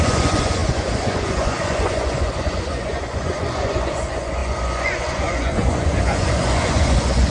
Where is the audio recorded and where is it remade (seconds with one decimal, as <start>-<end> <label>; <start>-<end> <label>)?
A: 0.0-7.3 remade